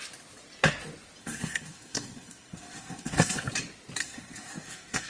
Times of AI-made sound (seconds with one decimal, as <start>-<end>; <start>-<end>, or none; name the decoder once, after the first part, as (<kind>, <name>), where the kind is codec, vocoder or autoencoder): 1.2-3.5 (codec, SNAC); 4.0-5.1